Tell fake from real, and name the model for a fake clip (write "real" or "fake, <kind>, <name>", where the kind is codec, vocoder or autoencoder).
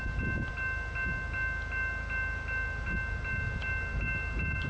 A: real